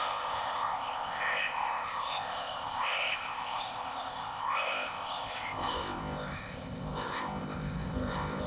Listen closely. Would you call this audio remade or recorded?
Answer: remade